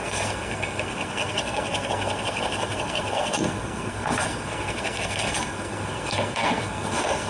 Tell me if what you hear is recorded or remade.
remade